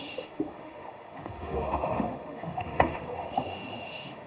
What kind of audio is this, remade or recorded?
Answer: remade